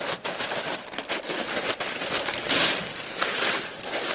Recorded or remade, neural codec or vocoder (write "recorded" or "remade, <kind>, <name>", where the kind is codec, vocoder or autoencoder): remade, vocoder, BigVGAN v2